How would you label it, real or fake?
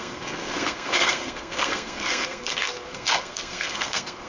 fake